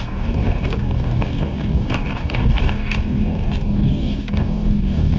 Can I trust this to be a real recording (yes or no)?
no